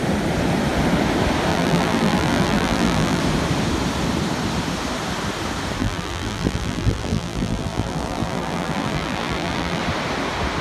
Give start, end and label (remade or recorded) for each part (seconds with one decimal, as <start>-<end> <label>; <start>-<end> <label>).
0.0-1.5 recorded; 1.5-3.2 remade; 3.2-5.8 recorded; 5.8-9.8 remade; 9.8-10.6 recorded